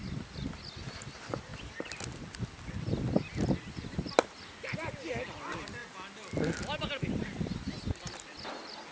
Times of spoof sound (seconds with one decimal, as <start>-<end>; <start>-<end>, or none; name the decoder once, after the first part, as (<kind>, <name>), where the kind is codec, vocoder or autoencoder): none